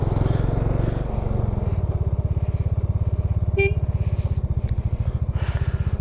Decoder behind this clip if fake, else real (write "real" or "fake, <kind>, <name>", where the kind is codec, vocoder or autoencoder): real